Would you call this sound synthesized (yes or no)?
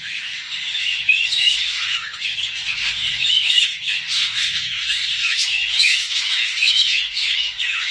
yes